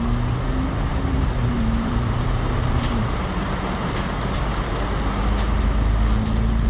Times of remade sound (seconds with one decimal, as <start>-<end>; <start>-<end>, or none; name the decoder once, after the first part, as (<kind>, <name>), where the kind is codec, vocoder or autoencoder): 0.9-4.4 (vocoder, BigVGAN v2)